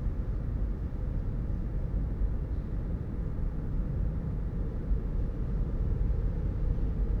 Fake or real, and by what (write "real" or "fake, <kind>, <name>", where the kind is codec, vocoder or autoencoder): real